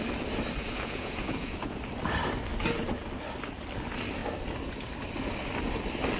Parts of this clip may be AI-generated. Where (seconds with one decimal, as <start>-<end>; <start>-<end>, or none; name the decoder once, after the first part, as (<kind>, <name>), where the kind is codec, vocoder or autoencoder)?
0.6-1.8 (vocoder, Vocos)